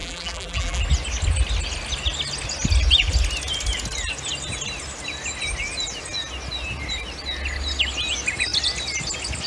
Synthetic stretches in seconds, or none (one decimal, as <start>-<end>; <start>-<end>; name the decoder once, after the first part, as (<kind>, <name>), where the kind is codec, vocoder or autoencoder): 0.0-0.8 (vocoder, BigVGAN v2)

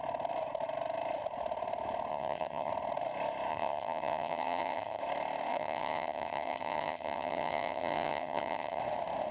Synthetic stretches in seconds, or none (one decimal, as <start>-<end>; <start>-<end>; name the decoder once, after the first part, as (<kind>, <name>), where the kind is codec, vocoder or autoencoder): 2.1-2.7 (vocoder, HiFi-GAN); 3.5-5.0; 5.5-8.8

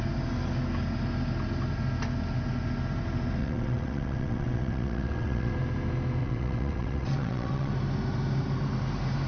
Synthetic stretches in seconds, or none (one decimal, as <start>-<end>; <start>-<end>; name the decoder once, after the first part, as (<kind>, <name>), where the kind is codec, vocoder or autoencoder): 3.4-5.5 (vocoder, WaveNeXt); 6.2-7.7